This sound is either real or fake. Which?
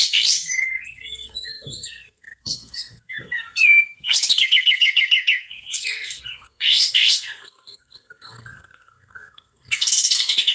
fake